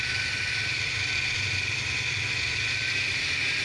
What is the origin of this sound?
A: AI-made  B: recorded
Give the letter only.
A